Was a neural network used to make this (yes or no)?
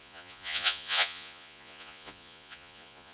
yes